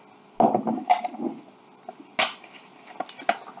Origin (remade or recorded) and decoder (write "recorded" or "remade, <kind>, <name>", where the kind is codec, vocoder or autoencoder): recorded